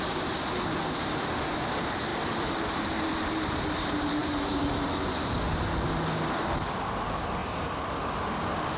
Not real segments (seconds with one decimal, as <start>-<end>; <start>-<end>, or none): 2.1-3.1